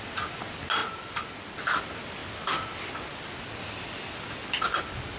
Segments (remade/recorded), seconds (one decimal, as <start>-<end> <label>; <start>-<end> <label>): 0.0-5.2 recorded